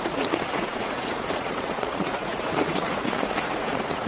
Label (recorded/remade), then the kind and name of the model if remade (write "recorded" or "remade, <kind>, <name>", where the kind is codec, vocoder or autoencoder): remade, vocoder, Vocos